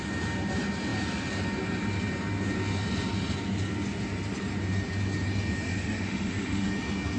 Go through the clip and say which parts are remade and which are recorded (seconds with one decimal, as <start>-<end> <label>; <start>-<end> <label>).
0.0-5.7 recorded; 5.7-6.7 remade; 6.7-7.2 recorded